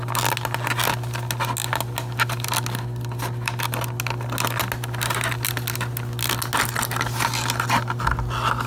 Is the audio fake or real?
real